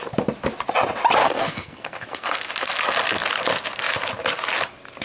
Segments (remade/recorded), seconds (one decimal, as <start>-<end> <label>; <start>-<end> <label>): 0.0-1.2 recorded; 1.2-2.5 remade; 2.5-5.0 recorded